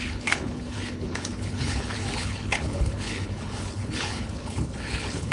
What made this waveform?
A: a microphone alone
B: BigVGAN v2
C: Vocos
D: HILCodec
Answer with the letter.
D